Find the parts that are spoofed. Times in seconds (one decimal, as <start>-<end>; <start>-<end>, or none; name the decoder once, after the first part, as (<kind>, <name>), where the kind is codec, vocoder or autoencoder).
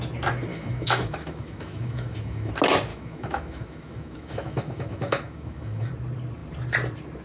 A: 0.5-2.5 (autoencoder, DAC-VAE); 2.9-5.9